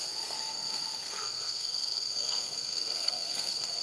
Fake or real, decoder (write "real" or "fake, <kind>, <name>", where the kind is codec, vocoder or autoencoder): fake, codec, SNAC